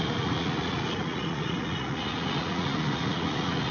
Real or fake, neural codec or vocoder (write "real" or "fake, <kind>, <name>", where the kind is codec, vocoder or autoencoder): fake, vocoder, Vocos